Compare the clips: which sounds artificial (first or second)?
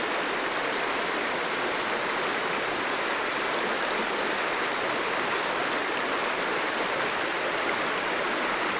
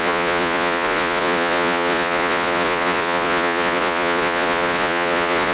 second